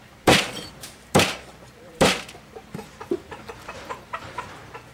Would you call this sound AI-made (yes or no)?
yes